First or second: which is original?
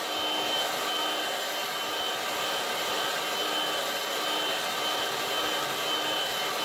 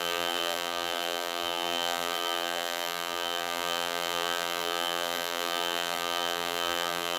first